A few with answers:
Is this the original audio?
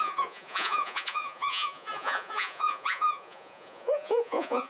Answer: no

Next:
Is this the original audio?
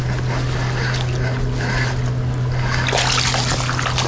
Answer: yes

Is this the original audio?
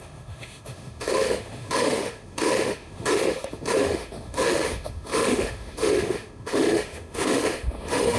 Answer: no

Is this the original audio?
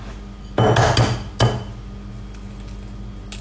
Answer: yes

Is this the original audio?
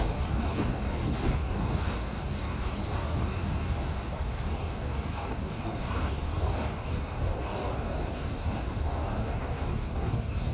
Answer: no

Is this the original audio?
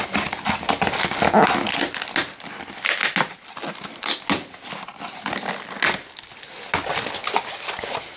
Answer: yes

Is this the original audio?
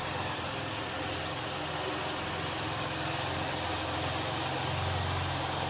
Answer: yes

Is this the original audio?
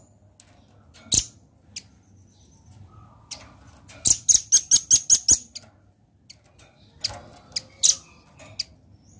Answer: yes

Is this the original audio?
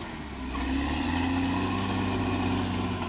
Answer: yes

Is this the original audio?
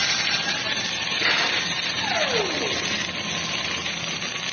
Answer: yes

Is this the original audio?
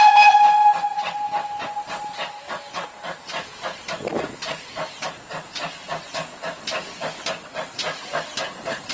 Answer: yes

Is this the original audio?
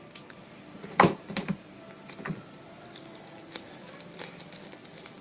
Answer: yes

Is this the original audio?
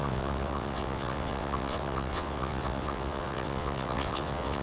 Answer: no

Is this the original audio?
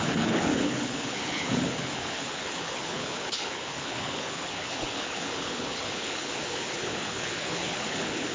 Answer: no